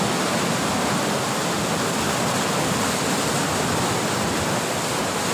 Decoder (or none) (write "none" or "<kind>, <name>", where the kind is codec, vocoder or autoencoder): none